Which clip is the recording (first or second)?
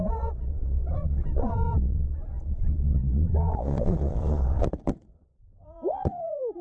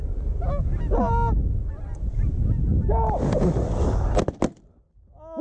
second